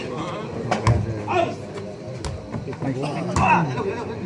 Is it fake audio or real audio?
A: real